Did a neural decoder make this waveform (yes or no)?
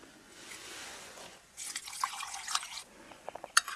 yes